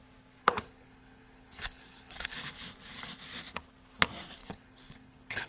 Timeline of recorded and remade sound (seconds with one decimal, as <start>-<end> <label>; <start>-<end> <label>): 0.0-0.4 recorded; 0.4-2.5 remade; 2.5-4.4 recorded; 4.4-5.5 remade